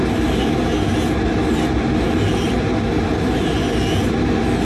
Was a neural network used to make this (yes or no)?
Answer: no